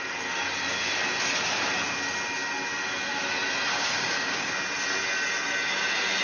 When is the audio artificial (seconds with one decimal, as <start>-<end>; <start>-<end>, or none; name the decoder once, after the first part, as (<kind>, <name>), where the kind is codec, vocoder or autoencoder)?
3.7-4.5 (codec, DAC)